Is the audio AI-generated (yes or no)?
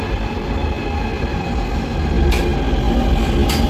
no